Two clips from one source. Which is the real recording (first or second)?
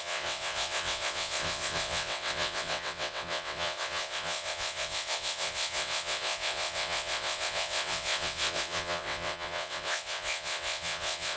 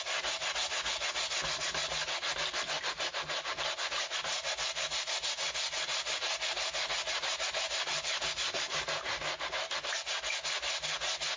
second